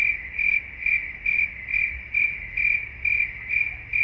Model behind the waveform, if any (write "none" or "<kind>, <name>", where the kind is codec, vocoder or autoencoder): none